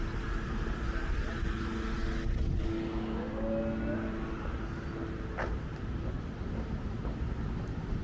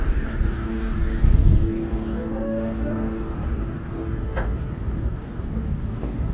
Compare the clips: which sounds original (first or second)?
first